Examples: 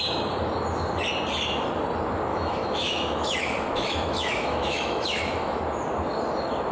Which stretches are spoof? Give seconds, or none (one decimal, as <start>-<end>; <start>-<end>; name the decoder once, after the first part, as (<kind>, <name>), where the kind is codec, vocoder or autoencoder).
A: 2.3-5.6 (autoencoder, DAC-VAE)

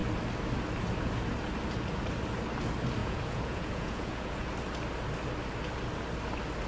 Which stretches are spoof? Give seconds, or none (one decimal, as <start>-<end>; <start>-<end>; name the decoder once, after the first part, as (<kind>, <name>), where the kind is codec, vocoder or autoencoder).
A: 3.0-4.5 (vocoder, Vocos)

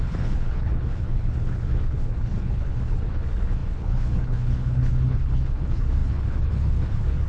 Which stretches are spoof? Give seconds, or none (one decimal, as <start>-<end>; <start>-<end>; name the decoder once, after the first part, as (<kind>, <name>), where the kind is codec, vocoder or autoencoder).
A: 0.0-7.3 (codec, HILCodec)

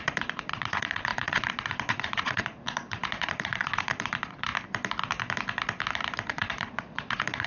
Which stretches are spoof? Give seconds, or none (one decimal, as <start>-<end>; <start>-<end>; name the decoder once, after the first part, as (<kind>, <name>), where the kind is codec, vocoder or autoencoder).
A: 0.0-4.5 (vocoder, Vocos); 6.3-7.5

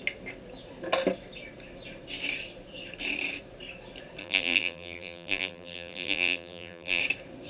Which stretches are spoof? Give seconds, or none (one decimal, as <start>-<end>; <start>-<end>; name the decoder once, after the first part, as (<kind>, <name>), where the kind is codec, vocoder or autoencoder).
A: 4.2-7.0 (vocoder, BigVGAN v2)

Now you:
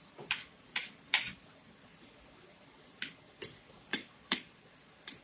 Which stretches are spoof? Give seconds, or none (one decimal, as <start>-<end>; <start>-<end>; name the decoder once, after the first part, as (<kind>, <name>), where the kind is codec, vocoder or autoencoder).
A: 0.8-2.6 (vocoder, BigVGAN v2); 3.9-5.2

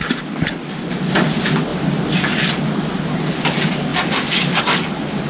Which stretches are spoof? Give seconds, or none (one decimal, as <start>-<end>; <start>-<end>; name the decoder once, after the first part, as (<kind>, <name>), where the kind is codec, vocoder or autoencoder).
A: none

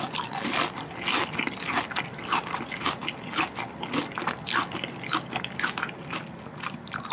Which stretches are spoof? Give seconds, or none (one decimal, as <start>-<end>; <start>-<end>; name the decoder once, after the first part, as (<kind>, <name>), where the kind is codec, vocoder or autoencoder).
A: none